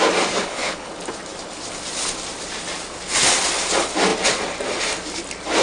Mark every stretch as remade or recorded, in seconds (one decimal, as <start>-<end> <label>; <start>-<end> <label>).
0.0-0.4 recorded; 0.4-0.9 remade; 0.9-5.6 recorded